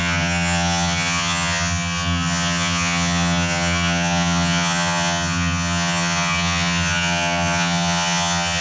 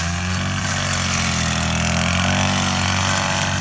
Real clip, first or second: second